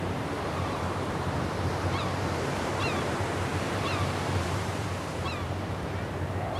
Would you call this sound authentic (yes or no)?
no